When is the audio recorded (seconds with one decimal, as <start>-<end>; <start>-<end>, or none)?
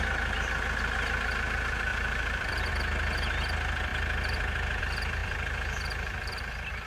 0.0-1.9; 2.7-5.2